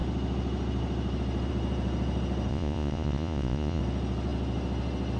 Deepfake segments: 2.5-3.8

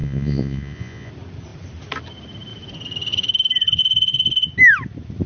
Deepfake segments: 0.0-1.1

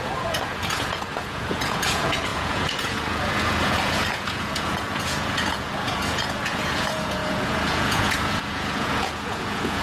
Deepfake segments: 0.0-9.8

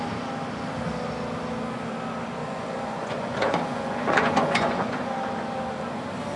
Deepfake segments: 2.4-5.0

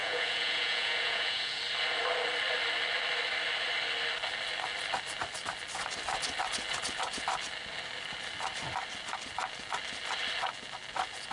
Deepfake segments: 0.0-1.6

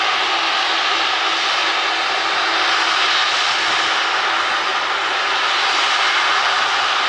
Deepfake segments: none

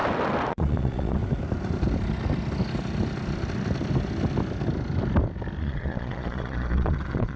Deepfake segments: 0.5-1.2; 5.6-7.4

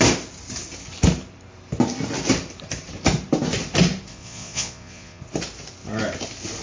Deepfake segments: 4.1-5.2